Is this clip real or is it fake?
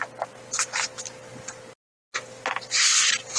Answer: real